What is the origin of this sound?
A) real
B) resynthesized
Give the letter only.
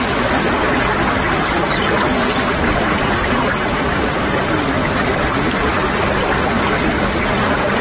A